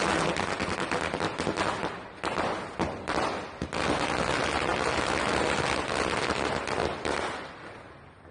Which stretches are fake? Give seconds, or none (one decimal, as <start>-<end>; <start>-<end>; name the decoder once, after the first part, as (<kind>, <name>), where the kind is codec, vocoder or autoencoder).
none